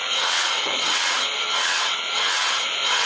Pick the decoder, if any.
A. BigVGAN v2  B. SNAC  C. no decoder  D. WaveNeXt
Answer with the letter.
D